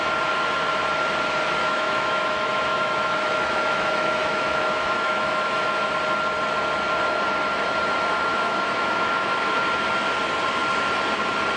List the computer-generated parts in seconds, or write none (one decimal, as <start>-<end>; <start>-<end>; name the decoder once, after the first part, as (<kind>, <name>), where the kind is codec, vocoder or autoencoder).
1.6-5.9 (autoencoder, DAC-VAE); 8.3-9.6